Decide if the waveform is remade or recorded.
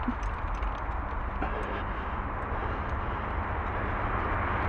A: recorded